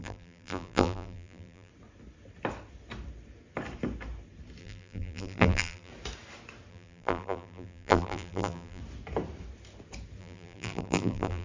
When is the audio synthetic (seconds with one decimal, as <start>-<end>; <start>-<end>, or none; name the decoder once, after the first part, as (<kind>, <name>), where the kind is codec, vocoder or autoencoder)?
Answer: 0.0-1.7 (vocoder, BigVGAN v2); 4.6-5.9; 6.7-8.8; 10.2-11.4